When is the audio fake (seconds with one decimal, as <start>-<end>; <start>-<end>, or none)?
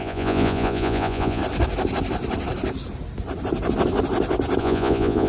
0.0-1.4; 4.6-5.3